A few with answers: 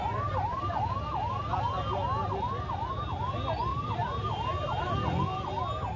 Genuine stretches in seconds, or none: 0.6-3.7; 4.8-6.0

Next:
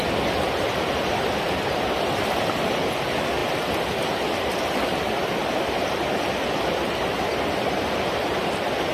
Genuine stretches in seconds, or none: 0.0-8.9